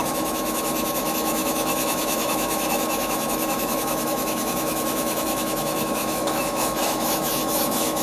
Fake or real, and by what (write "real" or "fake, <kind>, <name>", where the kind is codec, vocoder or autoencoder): fake, autoencoder, DAC-VAE